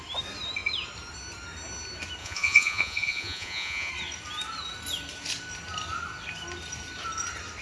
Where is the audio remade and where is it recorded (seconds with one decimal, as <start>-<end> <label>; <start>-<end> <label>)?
0.0-2.2 recorded; 2.2-3.9 remade; 3.9-7.6 recorded